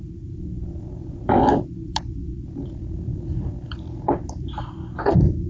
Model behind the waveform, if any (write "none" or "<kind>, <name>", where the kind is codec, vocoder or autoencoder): vocoder, BigVGAN v2